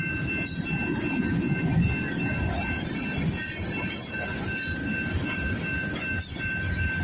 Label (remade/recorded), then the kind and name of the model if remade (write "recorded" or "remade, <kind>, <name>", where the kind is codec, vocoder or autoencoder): recorded